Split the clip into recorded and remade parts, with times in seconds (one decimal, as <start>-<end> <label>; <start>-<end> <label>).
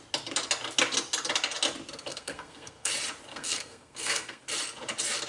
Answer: 0.0-2.1 recorded; 2.1-2.9 remade; 2.9-3.3 recorded; 3.3-4.4 remade; 4.4-5.3 recorded